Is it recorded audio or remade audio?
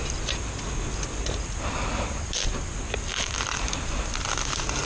recorded